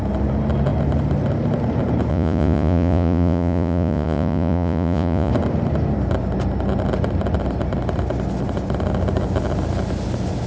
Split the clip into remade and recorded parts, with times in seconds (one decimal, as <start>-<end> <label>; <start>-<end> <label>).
0.0-2.1 recorded; 2.1-5.3 remade; 5.3-10.5 recorded